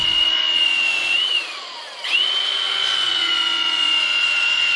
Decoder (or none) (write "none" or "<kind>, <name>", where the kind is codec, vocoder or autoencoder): vocoder, Vocos